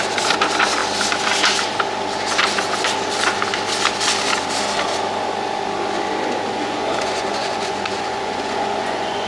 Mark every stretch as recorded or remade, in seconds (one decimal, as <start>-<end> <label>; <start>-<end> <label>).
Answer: 0.0-6.5 recorded; 6.5-9.3 remade